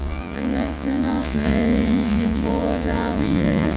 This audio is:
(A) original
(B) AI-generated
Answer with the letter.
B